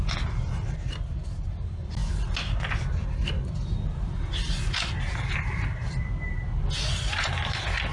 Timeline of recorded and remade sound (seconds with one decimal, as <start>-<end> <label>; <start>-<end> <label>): 0.0-7.9 recorded